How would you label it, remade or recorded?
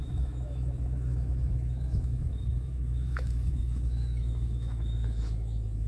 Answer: remade